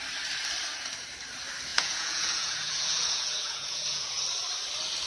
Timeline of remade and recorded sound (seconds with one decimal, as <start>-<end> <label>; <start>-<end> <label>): 0.0-1.7 recorded; 1.7-4.2 remade; 4.2-5.1 recorded